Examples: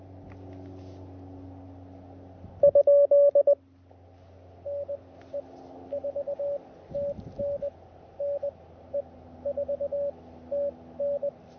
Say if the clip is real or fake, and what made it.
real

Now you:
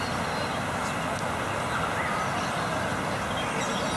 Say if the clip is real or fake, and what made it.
real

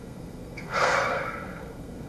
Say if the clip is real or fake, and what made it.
fake, codec, SNAC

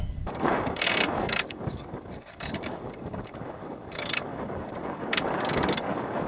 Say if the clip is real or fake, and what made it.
fake, codec, DAC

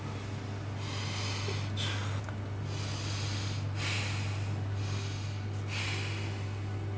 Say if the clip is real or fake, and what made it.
real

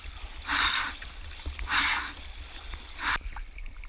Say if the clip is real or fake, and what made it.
real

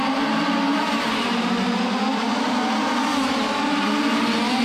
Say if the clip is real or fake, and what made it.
real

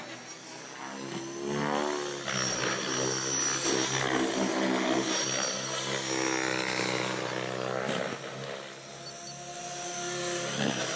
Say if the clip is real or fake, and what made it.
real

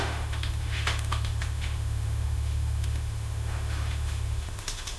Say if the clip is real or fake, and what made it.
fake, autoencoder, DAC-VAE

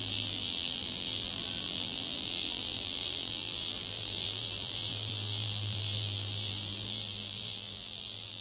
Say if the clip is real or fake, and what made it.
fake, vocoder, BigVGAN v2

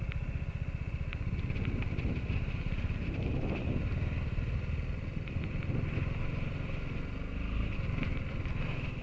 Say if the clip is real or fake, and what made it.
real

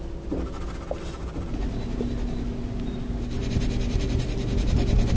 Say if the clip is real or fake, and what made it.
real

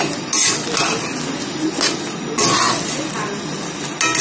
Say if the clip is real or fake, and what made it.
real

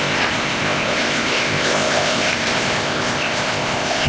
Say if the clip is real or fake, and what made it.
fake, codec, ZipCodec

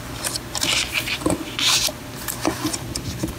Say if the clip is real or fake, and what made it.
fake, vocoder, BigVGAN v2